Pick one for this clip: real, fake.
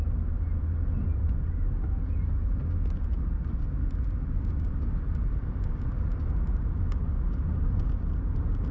real